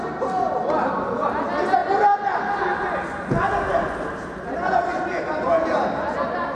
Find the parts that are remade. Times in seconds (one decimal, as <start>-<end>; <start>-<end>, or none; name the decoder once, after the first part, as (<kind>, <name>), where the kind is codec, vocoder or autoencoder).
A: none